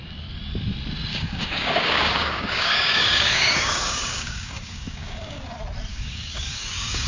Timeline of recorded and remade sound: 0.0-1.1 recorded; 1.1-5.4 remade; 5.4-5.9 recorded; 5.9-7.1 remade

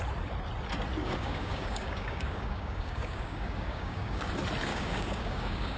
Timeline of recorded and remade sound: 0.0-1.0 recorded; 1.0-4.3 remade; 4.3-4.7 recorded; 4.7-5.8 remade

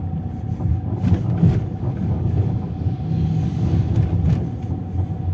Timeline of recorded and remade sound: 0.0-0.7 recorded; 0.7-3.9 remade; 3.9-5.3 recorded